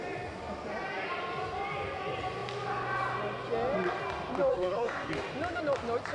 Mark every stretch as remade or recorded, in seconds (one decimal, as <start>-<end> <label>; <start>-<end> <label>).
0.0-4.5 recorded; 4.5-5.1 remade; 5.1-6.1 recorded